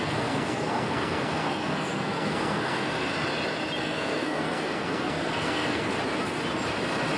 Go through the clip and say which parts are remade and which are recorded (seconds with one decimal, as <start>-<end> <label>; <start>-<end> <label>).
0.0-3.1 remade; 3.1-3.8 recorded; 3.8-5.9 remade; 5.9-7.2 recorded